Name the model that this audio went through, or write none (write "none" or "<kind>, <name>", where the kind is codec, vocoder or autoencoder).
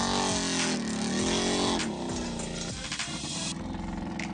none